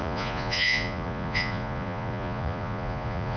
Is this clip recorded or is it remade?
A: remade